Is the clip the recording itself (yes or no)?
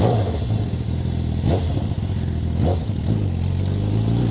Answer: yes